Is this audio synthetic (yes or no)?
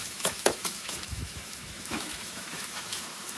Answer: yes